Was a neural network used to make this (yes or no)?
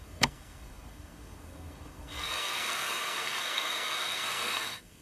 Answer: yes